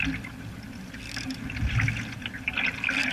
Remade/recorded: recorded